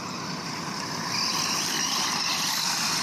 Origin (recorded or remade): recorded